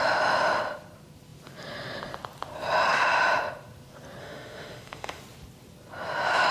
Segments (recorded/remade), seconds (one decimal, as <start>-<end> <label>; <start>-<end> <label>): 0.0-4.2 recorded; 4.2-5.2 remade; 5.2-6.5 recorded